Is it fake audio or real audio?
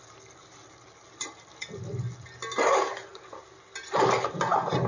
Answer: real